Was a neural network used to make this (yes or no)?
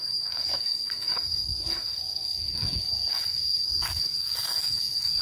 yes